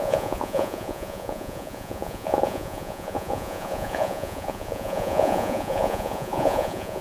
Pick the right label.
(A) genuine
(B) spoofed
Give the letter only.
B